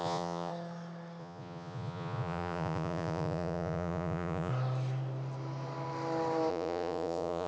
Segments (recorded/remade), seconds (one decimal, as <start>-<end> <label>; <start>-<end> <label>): 0.0-0.5 remade; 0.5-1.2 recorded; 1.2-4.5 remade; 4.5-6.5 recorded; 6.5-7.5 remade